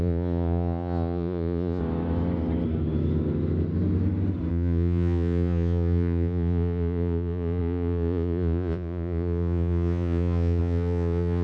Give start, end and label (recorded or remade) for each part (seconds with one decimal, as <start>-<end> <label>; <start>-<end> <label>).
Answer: 0.0-1.8 remade; 1.8-4.5 recorded; 4.5-11.4 remade